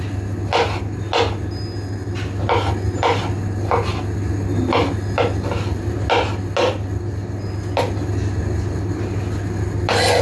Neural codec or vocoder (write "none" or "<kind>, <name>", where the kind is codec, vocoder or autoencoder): none